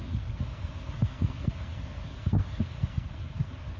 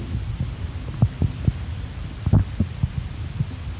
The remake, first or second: first